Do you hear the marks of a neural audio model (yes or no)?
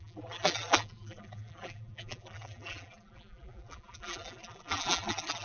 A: yes